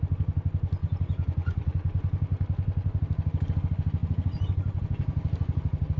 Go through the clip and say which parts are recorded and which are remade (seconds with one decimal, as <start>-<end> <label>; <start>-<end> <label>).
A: 0.0-0.8 recorded; 0.8-1.7 remade; 1.7-6.0 recorded